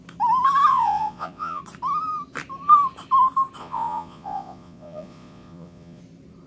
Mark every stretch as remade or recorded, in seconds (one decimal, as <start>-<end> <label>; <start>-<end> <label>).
0.0-0.7 recorded; 0.7-1.6 remade; 1.6-3.6 recorded; 3.6-6.0 remade; 6.0-6.5 recorded